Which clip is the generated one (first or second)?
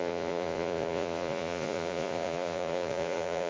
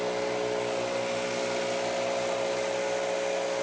first